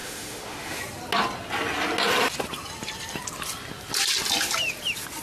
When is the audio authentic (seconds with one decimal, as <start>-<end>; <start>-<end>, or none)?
0.8-5.2